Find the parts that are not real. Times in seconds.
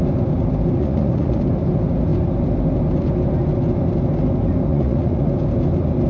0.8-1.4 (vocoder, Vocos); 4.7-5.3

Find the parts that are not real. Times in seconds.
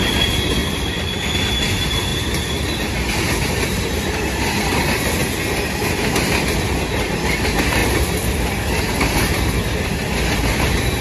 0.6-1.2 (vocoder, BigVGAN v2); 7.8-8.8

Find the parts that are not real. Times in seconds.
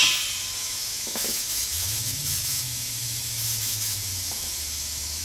0.6-5.2 (autoencoder, DAC-VAE)